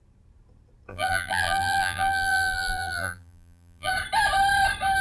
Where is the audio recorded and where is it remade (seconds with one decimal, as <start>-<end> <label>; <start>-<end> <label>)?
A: 0.0-0.9 recorded; 0.9-3.9 remade; 3.9-5.0 recorded